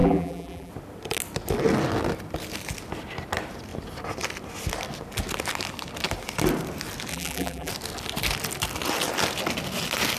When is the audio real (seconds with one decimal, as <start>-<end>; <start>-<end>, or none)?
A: 0.7-7.1; 7.7-10.2

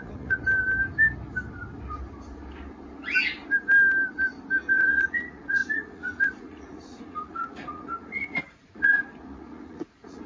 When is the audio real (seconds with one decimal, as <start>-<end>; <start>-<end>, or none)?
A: 0.4-4.7